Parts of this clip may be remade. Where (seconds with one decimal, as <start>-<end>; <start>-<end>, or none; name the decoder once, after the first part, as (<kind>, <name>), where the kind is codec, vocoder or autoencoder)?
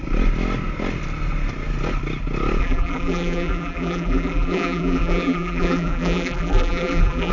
2.6-7.3 (vocoder, BigVGAN v2)